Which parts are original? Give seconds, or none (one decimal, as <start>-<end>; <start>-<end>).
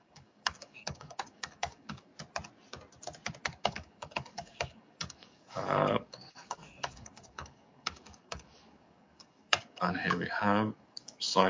2.1-3.6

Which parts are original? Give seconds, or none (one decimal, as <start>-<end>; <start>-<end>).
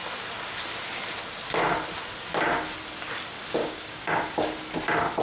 0.0-3.6; 4.2-5.2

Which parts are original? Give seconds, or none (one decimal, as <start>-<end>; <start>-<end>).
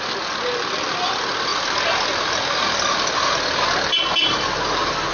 0.0-5.1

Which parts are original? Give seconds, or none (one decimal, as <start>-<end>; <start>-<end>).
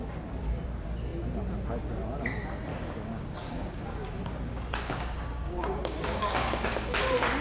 0.0-2.7; 7.0-7.4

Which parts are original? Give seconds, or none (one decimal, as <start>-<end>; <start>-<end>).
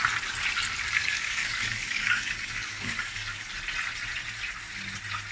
0.0-1.0; 3.5-5.3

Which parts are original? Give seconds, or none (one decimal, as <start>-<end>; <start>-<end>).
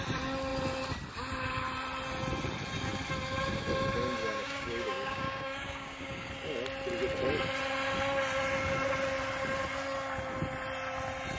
0.0-4.2; 6.3-11.4